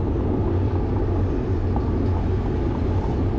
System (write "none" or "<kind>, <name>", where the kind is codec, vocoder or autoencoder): none